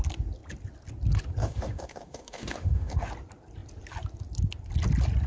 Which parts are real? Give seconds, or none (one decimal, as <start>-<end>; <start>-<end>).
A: 0.0-1.4; 3.1-5.3